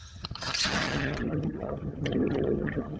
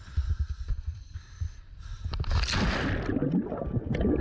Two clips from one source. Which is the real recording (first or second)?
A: second